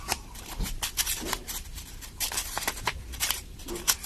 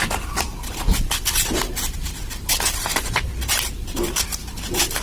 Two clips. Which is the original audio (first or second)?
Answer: second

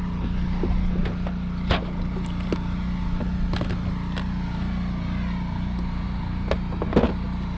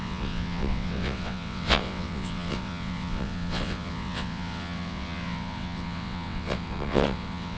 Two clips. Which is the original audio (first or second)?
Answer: first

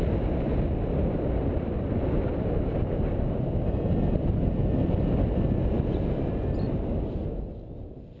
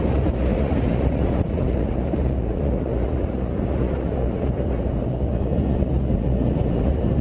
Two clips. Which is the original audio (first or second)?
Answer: first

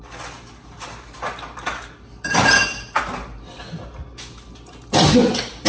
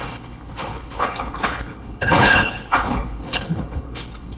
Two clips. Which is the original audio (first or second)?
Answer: first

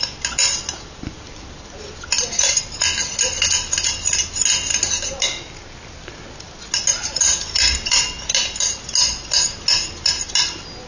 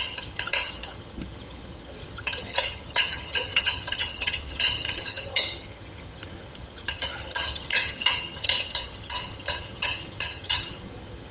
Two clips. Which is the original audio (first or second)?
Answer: first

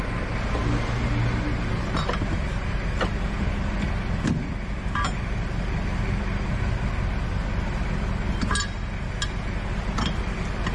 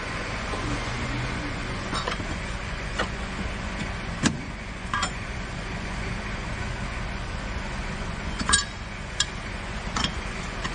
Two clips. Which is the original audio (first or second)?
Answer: first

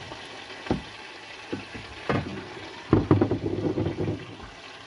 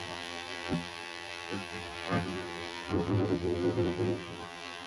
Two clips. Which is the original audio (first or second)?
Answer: first